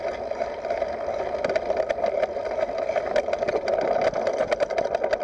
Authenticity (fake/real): real